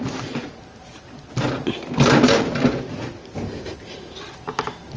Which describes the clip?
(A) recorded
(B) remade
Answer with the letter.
A